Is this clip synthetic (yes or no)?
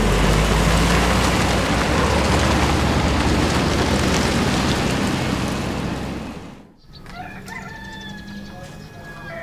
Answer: no